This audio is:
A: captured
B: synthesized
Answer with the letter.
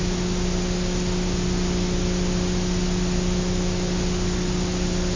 A